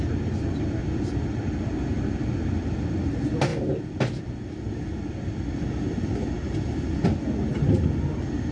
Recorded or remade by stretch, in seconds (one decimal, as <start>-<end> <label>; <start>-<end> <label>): 0.0-8.5 recorded